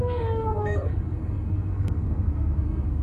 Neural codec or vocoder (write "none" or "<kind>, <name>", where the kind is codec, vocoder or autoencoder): codec, SNAC